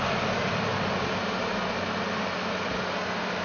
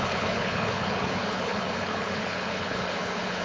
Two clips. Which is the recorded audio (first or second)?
first